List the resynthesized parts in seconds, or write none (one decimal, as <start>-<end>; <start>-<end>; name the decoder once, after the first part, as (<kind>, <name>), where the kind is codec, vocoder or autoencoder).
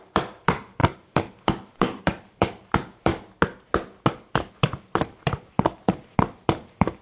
0.0-3.1 (vocoder, BigVGAN v2); 4.5-7.0